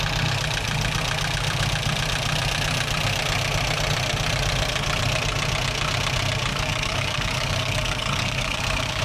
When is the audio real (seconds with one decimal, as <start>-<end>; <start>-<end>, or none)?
0.0-6.5